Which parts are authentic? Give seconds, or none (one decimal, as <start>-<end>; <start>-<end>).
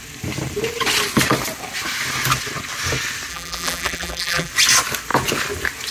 0.0-3.3; 4.5-5.9